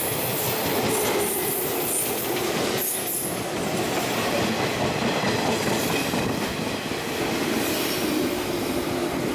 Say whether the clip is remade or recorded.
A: recorded